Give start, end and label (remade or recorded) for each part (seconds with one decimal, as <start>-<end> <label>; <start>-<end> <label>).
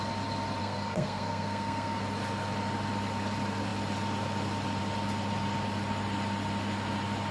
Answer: 0.0-0.6 recorded; 0.6-2.0 remade; 2.0-7.3 recorded